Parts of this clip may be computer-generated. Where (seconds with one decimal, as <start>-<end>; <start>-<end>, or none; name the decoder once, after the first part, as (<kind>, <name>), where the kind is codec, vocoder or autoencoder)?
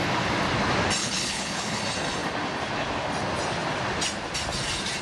1.0-1.8 (codec, HILCodec)